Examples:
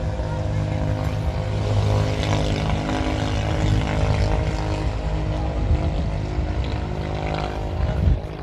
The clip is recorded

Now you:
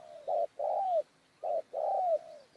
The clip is remade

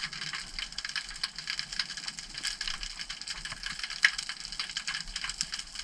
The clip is recorded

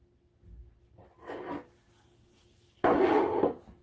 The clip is recorded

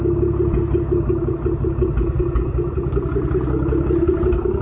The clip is recorded